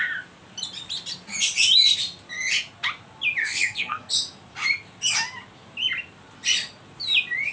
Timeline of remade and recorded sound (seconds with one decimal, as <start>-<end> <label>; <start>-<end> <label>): 0.0-3.4 recorded; 3.4-4.1 remade; 4.1-7.5 recorded